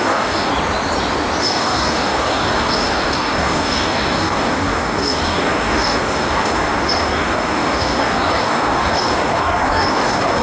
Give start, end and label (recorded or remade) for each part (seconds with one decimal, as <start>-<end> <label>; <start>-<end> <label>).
0.0-0.5 remade; 0.5-1.4 recorded; 1.4-10.4 remade